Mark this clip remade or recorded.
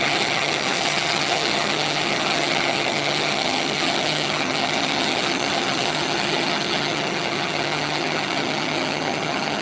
remade